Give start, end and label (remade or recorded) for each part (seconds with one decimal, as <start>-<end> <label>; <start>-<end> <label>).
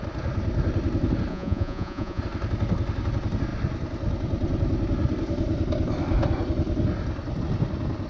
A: 0.0-1.3 recorded; 1.3-2.2 remade; 2.2-8.1 recorded